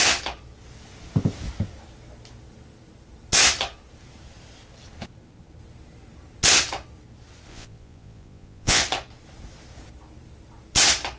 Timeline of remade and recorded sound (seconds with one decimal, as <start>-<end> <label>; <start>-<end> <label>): 0.0-7.5 recorded; 7.5-8.8 remade; 8.8-11.2 recorded